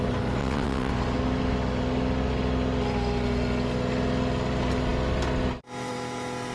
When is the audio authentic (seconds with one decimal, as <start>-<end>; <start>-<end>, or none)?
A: 0.0-0.4; 0.9-6.5